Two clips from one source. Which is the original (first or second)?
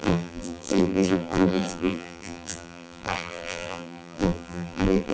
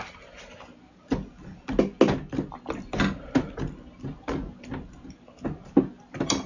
second